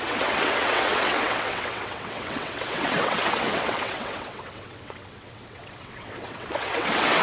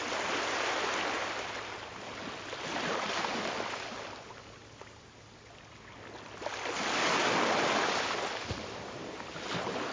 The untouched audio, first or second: second